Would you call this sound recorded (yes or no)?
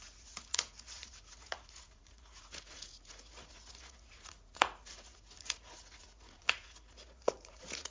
no